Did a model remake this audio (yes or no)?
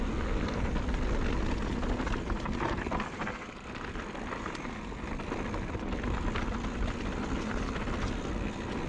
no